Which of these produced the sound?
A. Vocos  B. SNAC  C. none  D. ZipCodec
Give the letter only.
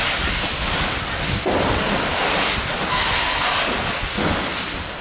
C